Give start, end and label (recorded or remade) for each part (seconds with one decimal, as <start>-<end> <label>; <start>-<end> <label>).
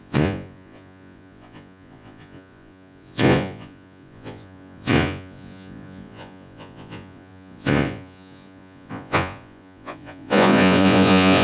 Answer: 0.0-11.4 remade